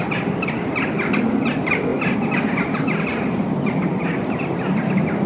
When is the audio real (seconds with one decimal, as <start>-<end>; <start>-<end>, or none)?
0.0-5.3